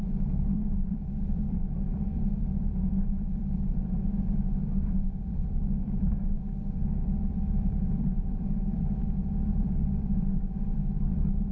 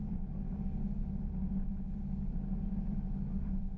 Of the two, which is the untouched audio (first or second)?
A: second